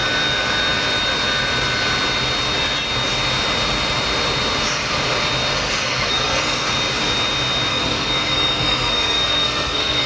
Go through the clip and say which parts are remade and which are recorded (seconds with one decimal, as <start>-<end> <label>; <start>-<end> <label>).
0.0-5.5 recorded; 5.5-6.7 remade; 6.7-7.7 recorded; 7.7-10.1 remade